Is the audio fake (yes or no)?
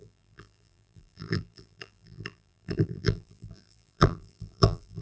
yes